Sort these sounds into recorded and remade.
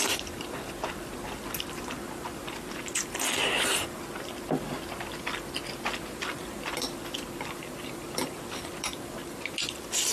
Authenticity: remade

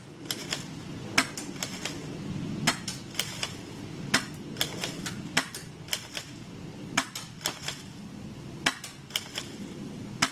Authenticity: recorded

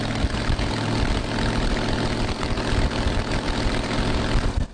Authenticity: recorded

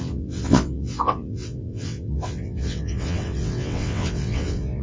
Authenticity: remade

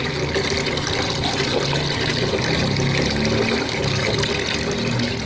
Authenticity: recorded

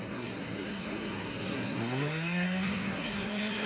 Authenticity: remade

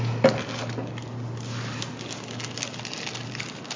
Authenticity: recorded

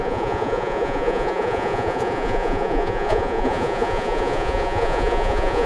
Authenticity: remade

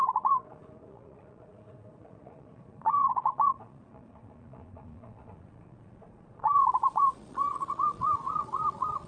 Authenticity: remade